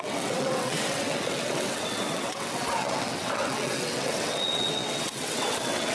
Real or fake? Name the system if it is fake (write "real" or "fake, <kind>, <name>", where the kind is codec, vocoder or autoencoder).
fake, vocoder, WaveNeXt